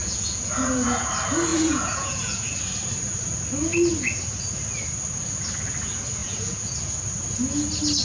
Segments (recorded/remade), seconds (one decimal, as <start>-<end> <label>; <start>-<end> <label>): 0.0-1.1 remade; 1.1-1.5 recorded; 1.5-2.6 remade; 2.6-6.2 recorded; 6.2-6.8 remade; 6.8-8.0 recorded